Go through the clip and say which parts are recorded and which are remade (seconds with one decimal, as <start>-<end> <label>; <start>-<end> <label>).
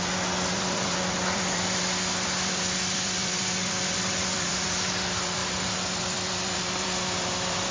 0.0-5.4 remade; 5.4-6.0 recorded; 6.0-7.7 remade